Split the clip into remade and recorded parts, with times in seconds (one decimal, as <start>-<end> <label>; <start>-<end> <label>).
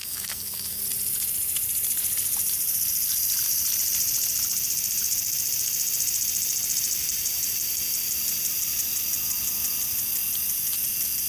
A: 0.0-0.8 remade; 0.8-11.3 recorded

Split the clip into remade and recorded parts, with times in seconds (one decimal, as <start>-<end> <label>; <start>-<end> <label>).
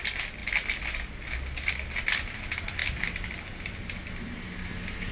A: 0.0-5.1 recorded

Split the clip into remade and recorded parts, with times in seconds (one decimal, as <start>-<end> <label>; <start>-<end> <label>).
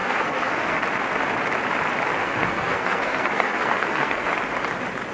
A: 0.0-0.8 remade; 0.8-2.2 recorded; 2.2-4.3 remade; 4.3-5.1 recorded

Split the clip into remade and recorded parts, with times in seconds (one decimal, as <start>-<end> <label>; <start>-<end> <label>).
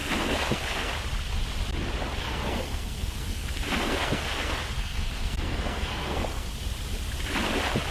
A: 0.0-0.9 remade; 0.9-2.2 recorded; 2.2-6.5 remade; 6.5-7.9 recorded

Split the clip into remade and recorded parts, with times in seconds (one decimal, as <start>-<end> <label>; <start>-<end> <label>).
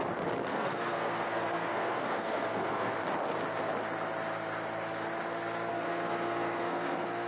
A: 0.0-0.5 recorded; 0.5-2.9 remade; 2.9-5.7 recorded; 5.7-7.3 remade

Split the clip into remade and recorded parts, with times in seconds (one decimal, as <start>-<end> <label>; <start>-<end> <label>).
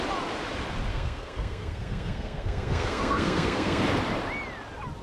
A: 0.0-0.9 recorded; 0.9-3.8 remade; 3.8-5.0 recorded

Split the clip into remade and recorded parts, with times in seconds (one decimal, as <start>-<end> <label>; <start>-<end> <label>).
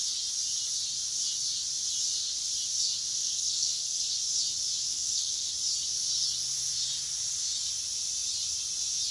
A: 0.0-3.2 recorded; 3.2-4.0 remade; 4.0-4.9 recorded; 4.9-5.5 remade; 5.5-9.1 recorded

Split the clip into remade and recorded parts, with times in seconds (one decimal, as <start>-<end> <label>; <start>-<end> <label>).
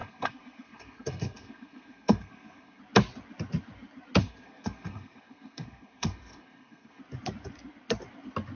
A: 0.0-2.8 remade; 2.8-4.2 recorded; 4.2-7.0 remade; 7.0-8.5 recorded